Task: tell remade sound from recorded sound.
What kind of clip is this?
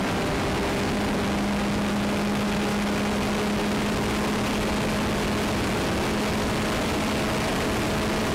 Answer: recorded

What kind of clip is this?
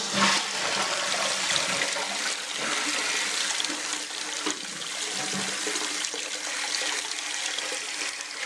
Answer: recorded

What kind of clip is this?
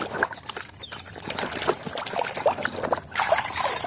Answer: remade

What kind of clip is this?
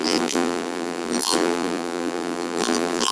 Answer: remade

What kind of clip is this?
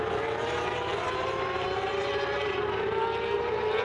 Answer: remade